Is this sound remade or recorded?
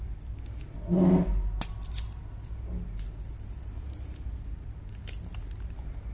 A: recorded